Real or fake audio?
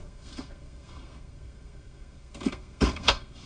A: fake